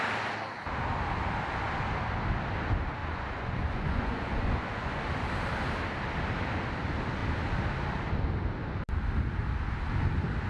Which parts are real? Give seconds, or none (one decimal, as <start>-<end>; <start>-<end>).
0.0-3.0; 5.0-10.5